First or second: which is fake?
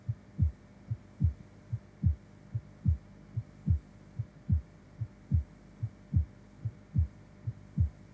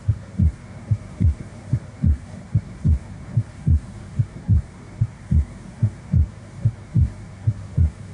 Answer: second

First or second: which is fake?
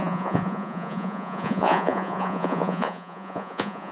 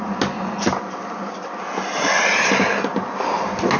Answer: first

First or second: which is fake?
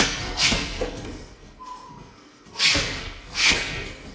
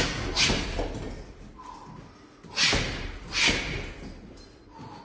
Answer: first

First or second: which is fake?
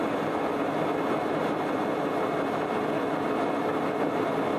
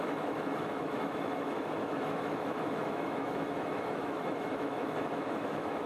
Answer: second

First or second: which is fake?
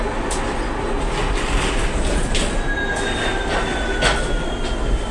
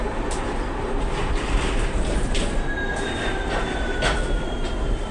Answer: second